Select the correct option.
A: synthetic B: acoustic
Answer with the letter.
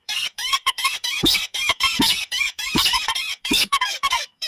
A